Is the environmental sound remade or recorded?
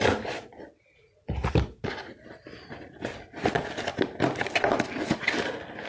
recorded